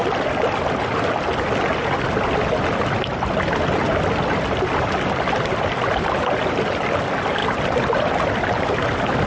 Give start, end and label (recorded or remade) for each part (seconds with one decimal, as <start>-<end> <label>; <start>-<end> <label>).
0.0-7.4 recorded; 7.4-8.3 remade; 8.3-9.3 recorded